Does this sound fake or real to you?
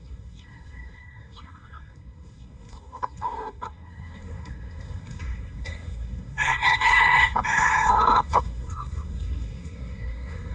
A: fake